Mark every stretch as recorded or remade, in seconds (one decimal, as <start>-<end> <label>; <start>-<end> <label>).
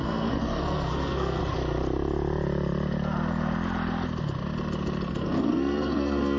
0.0-1.4 remade; 1.4-5.1 recorded; 5.1-6.4 remade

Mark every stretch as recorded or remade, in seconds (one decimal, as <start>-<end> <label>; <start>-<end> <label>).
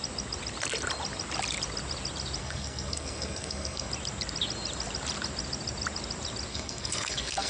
0.0-2.4 recorded; 2.4-3.9 remade; 3.9-6.5 recorded; 6.5-7.5 remade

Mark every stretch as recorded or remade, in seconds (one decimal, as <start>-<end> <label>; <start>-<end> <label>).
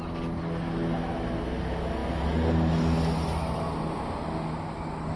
0.0-5.2 recorded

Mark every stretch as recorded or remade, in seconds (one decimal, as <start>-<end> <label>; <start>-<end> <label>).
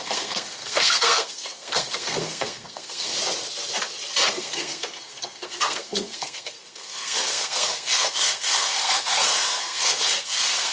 0.0-3.1 remade; 3.1-4.3 recorded; 4.3-10.7 remade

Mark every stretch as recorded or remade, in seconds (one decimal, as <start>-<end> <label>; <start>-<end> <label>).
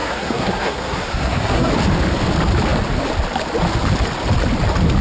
0.0-1.7 remade; 1.7-5.0 recorded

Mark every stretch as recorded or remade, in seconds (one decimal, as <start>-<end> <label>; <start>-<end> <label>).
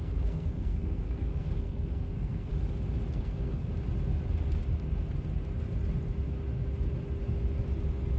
0.0-2.5 remade; 2.5-3.1 recorded; 3.1-3.7 remade; 3.7-8.2 recorded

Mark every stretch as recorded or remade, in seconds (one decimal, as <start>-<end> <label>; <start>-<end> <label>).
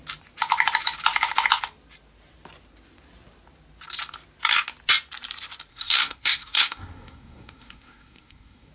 0.0-5.7 recorded; 5.7-8.7 remade